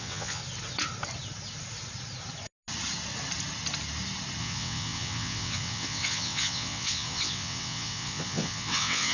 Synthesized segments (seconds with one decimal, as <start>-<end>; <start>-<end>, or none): 0.0-0.4; 4.4-9.1